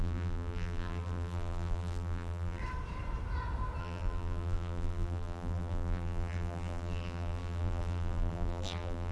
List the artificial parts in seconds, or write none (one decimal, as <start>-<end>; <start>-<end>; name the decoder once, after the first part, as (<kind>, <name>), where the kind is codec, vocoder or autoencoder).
0.0-2.6 (vocoder, BigVGAN v2); 3.8-9.1